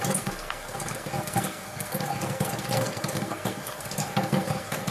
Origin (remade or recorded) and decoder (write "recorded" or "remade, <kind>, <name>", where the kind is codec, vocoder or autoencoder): remade, codec, SNAC